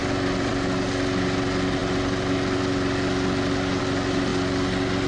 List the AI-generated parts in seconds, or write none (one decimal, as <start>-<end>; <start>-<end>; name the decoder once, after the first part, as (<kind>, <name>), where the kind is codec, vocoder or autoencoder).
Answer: none